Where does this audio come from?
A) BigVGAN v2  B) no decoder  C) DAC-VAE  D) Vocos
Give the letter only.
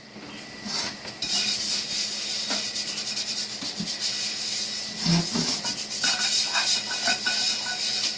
B